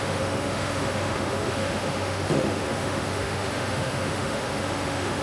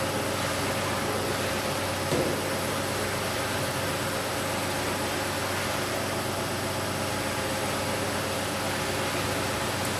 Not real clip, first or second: first